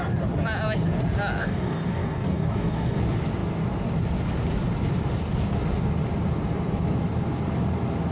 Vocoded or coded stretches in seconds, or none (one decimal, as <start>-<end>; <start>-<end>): 1.4-3.0